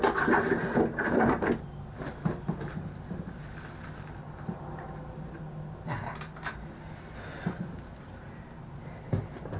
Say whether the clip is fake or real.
real